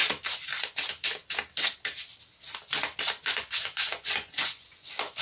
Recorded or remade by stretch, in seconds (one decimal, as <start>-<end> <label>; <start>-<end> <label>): 0.0-3.1 recorded; 3.1-5.2 remade

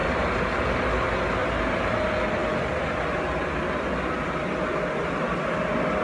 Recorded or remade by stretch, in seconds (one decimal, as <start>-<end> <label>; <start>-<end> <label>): 0.0-0.6 remade; 0.6-1.4 recorded; 1.4-2.0 remade; 2.0-6.0 recorded

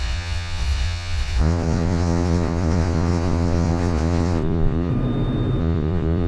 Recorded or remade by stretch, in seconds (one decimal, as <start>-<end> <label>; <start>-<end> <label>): 0.0-4.9 remade; 4.9-5.6 recorded; 5.6-6.3 remade

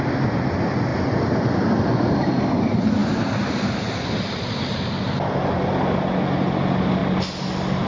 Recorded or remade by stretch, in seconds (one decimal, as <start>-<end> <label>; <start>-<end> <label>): 0.0-0.9 recorded; 0.9-1.7 remade; 1.7-3.0 recorded; 3.0-3.8 remade; 3.8-7.9 recorded

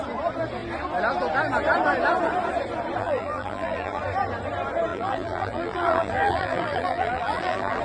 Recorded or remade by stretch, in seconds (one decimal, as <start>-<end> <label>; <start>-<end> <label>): 0.0-3.0 recorded; 3.0-4.0 remade; 4.0-4.9 recorded; 4.9-7.8 remade

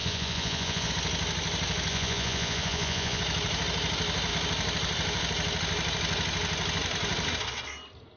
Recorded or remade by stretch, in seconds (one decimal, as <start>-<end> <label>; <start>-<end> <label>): 0.0-0.9 remade; 0.9-1.9 recorded; 1.9-3.2 remade; 3.2-8.2 recorded